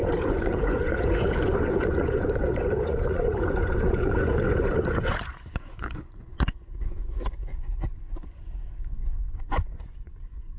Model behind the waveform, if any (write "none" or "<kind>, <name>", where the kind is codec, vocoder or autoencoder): vocoder, Vocos